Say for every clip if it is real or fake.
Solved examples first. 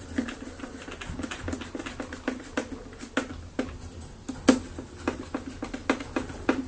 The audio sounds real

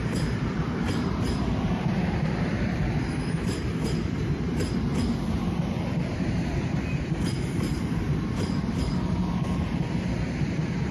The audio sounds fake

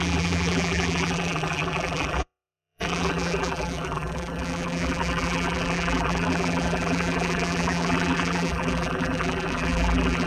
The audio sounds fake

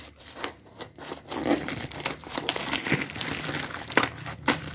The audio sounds fake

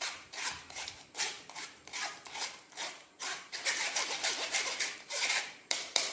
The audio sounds fake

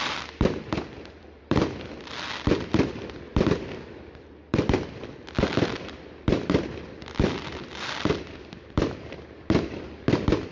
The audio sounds fake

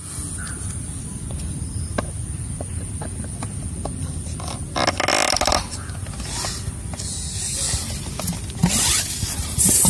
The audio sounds real